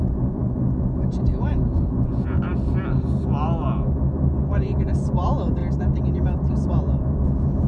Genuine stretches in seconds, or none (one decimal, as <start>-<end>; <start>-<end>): 2.5-4.3; 5.6-6.5

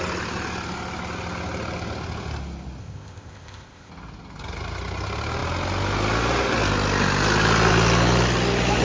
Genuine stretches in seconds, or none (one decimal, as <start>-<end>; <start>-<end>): 0.0-2.8; 3.9-8.8

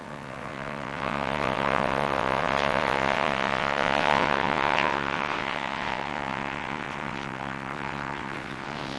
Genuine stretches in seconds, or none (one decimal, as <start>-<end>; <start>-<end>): none

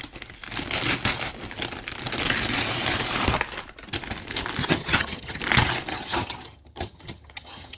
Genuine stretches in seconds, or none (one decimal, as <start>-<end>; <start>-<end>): 0.0-4.6; 5.4-5.9